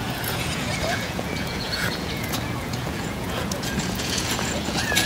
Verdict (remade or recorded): remade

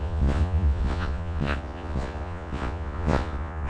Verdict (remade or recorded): remade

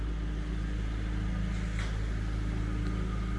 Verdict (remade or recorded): recorded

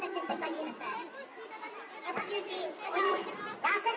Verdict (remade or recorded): remade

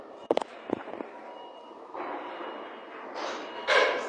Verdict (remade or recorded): remade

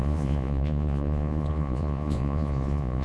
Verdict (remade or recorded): remade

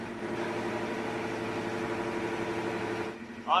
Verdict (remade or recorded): recorded